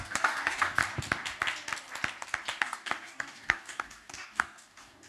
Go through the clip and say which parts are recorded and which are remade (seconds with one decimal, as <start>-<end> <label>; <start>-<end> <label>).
0.0-0.8 remade; 0.8-2.6 recorded; 2.6-5.1 remade